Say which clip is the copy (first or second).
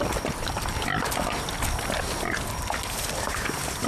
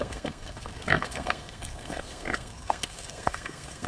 second